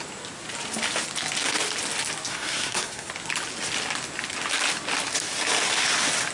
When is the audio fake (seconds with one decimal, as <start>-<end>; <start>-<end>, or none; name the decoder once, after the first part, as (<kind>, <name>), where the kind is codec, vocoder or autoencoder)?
2.3-3.1 (codec, SNAC)